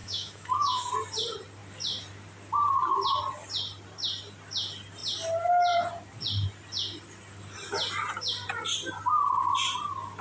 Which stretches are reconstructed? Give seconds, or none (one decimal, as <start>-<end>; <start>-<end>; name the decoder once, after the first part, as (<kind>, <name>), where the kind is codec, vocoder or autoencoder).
0.0-0.9 (autoencoder, DAC-VAE)